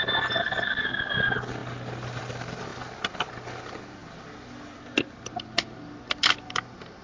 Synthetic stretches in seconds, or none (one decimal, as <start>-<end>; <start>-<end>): none